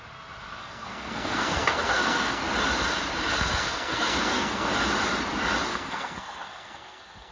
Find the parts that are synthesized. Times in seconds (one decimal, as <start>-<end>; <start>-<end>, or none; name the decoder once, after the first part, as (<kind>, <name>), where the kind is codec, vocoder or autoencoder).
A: 0.6-2.4 (codec, SNAC); 3.3-4.7; 5.7-7.3